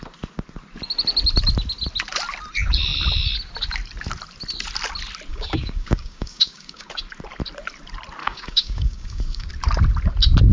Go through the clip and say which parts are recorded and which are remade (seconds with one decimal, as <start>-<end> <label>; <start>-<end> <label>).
0.0-5.3 recorded; 5.3-6.9 remade; 6.9-8.2 recorded; 8.2-9.5 remade; 9.5-10.5 recorded

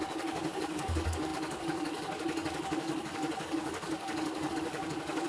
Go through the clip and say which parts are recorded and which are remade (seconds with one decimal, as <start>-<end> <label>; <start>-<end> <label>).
0.0-5.3 remade